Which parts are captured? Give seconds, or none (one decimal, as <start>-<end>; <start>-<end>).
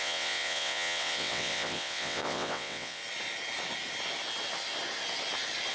3.0-5.7